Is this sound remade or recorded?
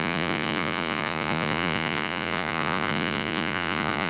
remade